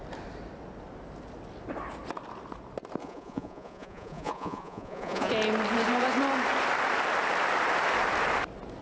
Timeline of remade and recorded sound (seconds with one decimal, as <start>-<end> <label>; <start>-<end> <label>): 0.0-3.0 recorded; 3.0-5.3 remade; 5.3-8.8 recorded